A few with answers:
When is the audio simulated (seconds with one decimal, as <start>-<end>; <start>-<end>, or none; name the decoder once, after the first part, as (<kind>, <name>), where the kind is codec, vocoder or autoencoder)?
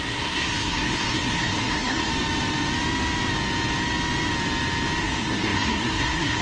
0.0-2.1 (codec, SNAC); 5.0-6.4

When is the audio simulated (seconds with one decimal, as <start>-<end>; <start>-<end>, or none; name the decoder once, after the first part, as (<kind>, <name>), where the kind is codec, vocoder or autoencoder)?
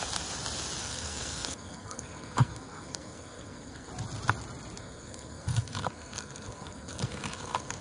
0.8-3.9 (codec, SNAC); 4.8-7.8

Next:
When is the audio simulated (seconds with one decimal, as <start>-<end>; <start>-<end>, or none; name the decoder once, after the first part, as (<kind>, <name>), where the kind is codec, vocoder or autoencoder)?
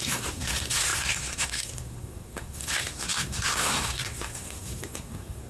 0.0-5.5 (codec, SNAC)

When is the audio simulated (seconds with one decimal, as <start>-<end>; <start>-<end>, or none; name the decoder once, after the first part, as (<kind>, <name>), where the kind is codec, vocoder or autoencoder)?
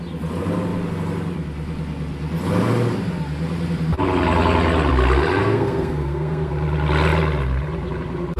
5.4-6.5 (codec, SNAC)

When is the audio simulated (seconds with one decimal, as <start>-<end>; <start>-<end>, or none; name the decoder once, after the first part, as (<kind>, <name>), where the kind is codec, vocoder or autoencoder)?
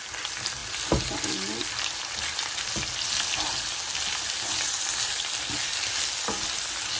none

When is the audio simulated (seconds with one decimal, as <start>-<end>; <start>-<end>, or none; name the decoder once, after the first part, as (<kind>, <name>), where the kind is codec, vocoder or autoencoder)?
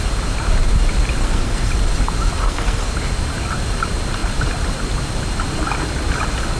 1.2-1.7 (codec, SNAC); 2.4-2.9